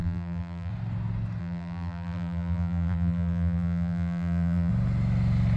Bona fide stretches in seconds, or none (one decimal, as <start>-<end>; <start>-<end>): 0.7-1.4; 4.7-5.6